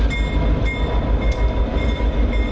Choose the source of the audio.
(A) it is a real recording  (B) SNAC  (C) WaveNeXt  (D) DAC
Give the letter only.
A